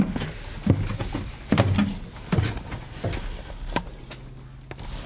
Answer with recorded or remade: recorded